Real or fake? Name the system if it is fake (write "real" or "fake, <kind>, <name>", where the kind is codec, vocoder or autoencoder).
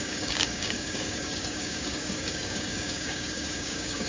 fake, codec, DAC